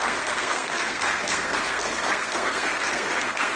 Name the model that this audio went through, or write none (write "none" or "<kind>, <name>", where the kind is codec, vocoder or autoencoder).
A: codec, SNAC